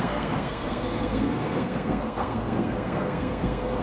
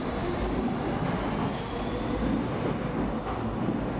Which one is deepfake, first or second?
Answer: first